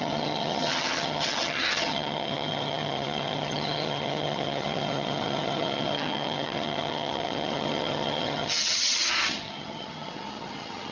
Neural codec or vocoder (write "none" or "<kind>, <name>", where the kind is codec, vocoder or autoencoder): vocoder, HiFi-GAN